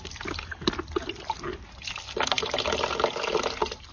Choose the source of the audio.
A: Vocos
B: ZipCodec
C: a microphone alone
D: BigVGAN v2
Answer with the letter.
C